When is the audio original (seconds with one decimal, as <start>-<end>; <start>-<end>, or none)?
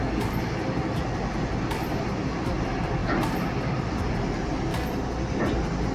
0.0-5.9